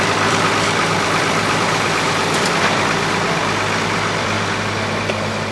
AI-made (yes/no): yes